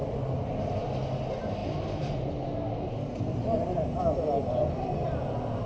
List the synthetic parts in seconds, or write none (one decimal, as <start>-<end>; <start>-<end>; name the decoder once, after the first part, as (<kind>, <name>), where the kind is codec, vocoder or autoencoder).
3.1-5.2 (vocoder, BigVGAN v2)